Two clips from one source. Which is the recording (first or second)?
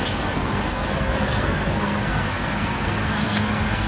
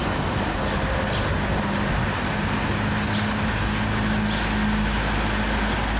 second